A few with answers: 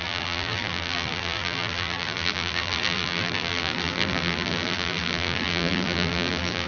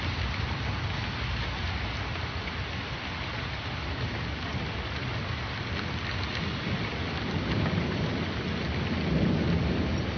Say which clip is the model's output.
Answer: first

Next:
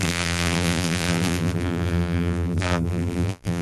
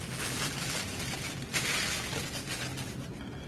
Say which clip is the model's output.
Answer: first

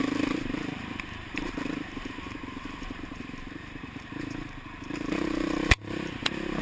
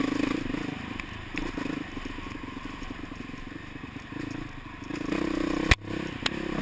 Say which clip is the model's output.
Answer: first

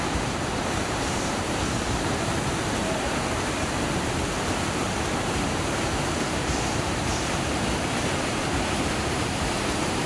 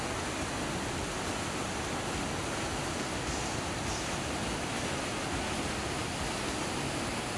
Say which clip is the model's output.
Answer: first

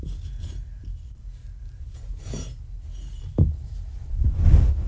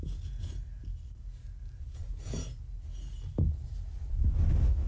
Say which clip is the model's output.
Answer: first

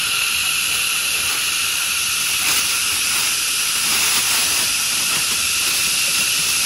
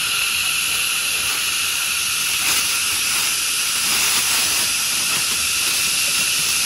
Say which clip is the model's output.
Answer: first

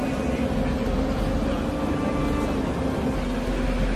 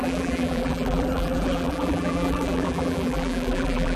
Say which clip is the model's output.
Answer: second